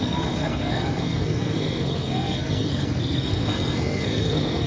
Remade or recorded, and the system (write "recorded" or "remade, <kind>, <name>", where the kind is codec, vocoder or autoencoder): remade, codec, SNAC